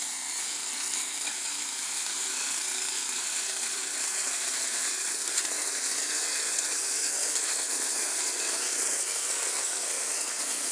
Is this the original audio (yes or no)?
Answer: no